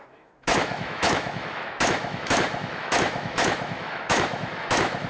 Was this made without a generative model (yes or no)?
no